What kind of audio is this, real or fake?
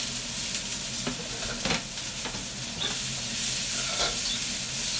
real